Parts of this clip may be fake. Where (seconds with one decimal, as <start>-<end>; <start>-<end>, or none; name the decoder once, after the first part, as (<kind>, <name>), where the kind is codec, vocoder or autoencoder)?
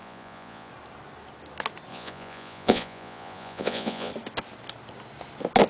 0.0-0.7 (vocoder, Vocos); 1.9-4.1